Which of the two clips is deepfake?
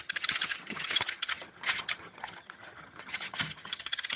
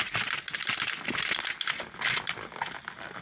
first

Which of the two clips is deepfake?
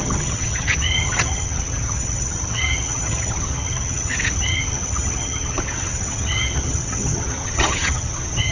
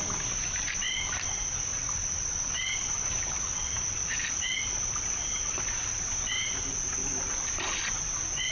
first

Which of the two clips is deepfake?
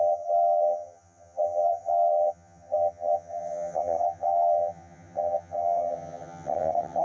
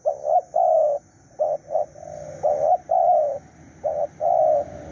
first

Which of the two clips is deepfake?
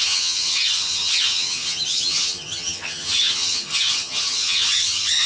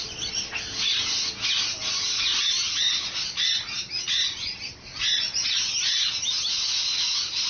first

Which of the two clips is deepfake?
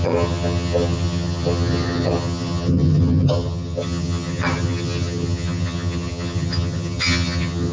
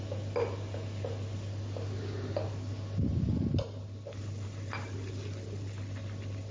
first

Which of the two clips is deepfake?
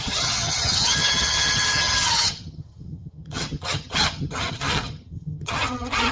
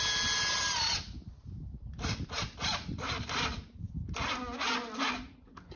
first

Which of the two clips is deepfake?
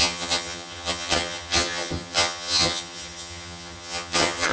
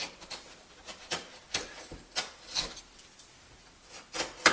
first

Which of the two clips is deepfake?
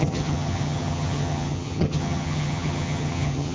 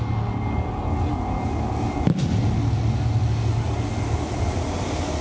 first